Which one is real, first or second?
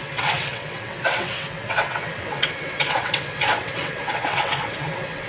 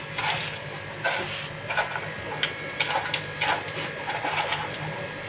second